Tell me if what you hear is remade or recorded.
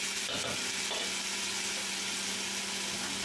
recorded